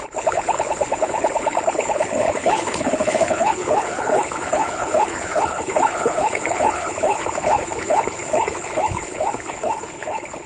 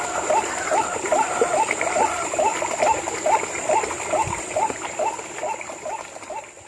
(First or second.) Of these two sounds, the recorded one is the second